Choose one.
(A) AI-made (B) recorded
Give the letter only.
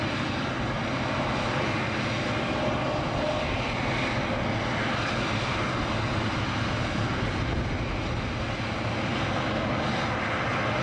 B